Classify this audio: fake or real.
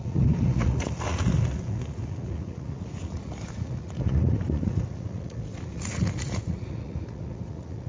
fake